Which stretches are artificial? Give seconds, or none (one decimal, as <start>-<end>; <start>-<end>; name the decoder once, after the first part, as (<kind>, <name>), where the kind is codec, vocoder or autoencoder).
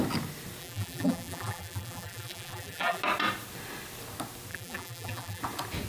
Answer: 0.6-3.0 (vocoder, BigVGAN v2); 4.5-5.4